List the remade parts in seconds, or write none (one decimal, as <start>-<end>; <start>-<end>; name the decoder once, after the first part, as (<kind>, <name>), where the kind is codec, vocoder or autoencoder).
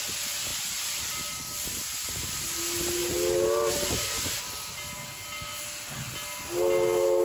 0.5-2.6 (vocoder, BigVGAN v2)